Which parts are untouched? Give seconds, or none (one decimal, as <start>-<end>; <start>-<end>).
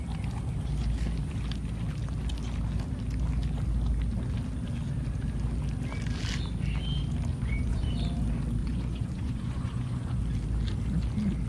0.0-7.3; 7.9-8.6; 10.2-11.5